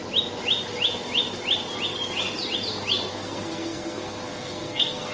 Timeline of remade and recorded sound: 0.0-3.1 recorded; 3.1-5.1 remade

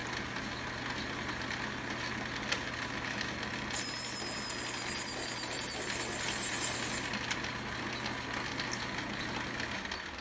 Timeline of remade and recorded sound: 0.0-10.2 recorded

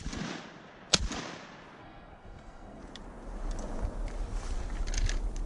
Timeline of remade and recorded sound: 0.0-1.8 recorded; 1.8-2.8 remade; 2.8-5.5 recorded

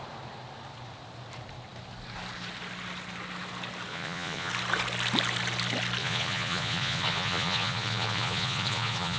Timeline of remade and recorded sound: 0.0-3.9 recorded; 3.9-4.5 remade; 4.5-6.0 recorded; 6.0-9.2 remade

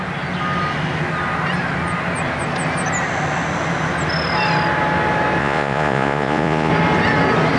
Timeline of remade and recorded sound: 0.0-5.4 recorded; 5.4-6.7 remade; 6.7-7.6 recorded

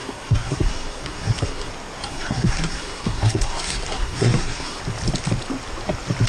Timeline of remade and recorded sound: 0.0-1.7 remade; 1.7-2.1 recorded; 2.1-4.8 remade; 4.8-6.3 recorded